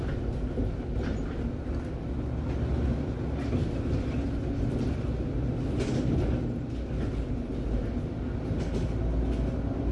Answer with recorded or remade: recorded